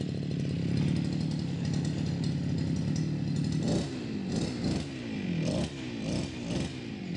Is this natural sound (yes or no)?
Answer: yes